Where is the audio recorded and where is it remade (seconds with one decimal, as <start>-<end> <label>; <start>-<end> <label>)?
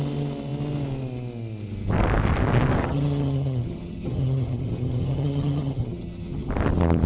0.0-2.8 recorded; 2.8-6.5 remade; 6.5-7.1 recorded